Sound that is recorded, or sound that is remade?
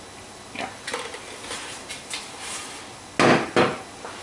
recorded